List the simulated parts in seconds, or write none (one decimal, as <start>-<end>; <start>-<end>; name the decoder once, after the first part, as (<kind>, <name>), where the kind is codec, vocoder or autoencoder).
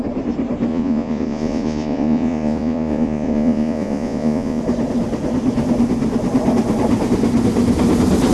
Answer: 0.7-4.6 (vocoder, Vocos)